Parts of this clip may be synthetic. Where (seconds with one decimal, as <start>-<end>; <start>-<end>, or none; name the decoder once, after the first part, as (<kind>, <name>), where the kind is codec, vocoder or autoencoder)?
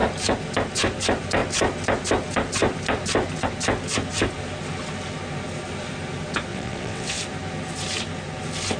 6.5-7.2 (vocoder, WaveNeXt)